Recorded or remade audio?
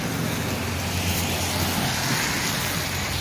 recorded